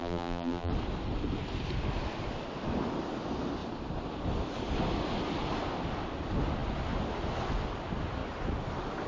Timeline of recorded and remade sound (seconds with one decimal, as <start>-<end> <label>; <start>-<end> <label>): 0.0-0.7 remade; 0.7-9.1 recorded